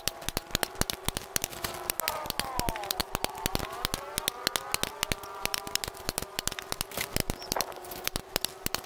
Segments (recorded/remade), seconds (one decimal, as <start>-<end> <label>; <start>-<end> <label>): 0.0-3.0 remade; 3.0-5.4 recorded; 5.4-8.9 remade